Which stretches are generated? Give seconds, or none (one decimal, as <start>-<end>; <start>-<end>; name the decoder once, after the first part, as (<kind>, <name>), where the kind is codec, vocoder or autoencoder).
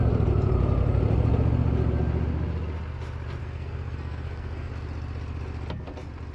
3.4-4.7 (codec, SNAC)